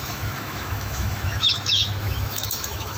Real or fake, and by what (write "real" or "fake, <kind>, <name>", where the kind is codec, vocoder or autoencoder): fake, autoencoder, DAC-VAE